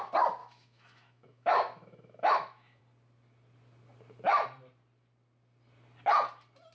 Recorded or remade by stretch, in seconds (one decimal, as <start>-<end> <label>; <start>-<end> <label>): 0.0-0.4 recorded; 0.4-2.8 remade; 2.8-6.7 recorded